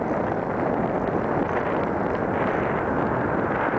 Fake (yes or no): no